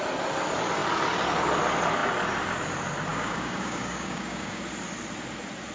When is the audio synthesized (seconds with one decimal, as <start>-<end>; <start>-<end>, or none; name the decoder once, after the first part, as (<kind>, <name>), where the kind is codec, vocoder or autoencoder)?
3.1-4.6 (codec, DAC)